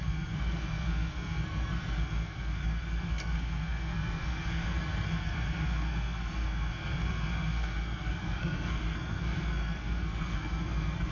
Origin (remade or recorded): remade